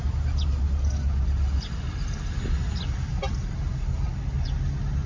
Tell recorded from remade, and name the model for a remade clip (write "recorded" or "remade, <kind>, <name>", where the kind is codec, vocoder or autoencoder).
recorded